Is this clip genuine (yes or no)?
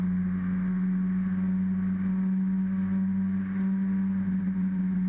yes